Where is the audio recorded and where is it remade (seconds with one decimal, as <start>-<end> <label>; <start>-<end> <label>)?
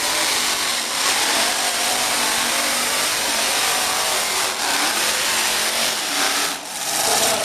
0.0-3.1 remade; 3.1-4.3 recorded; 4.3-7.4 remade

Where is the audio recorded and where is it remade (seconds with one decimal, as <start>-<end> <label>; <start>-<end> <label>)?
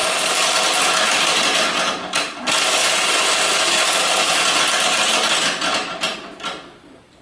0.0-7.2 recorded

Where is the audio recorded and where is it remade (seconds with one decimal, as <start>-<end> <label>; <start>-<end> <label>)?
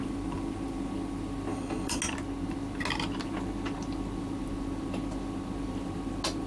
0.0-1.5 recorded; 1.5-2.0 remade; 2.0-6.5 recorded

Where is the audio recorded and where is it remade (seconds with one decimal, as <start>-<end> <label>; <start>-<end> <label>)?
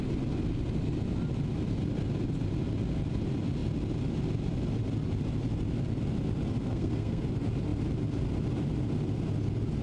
0.0-6.6 recorded; 6.6-7.2 remade; 7.2-9.8 recorded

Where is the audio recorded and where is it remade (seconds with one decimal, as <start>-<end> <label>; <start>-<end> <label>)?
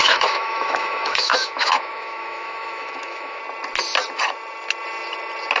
0.0-3.4 remade; 3.4-5.6 recorded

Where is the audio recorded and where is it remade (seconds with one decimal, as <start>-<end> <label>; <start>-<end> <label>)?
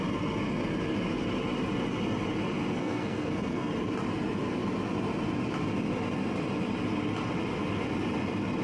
0.0-2.8 recorded; 2.8-3.7 remade; 3.7-8.6 recorded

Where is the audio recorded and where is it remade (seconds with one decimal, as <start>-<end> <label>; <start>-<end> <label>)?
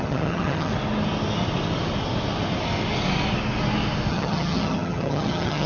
0.0-0.7 remade; 0.7-4.1 recorded; 4.1-5.7 remade